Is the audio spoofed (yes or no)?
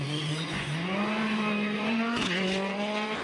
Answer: yes